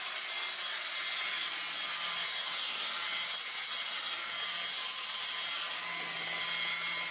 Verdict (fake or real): real